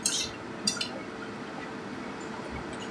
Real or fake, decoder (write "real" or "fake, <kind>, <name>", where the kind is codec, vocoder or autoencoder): real